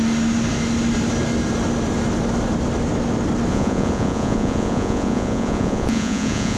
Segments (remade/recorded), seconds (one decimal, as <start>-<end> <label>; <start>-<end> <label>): 0.0-3.5 recorded; 3.5-6.6 remade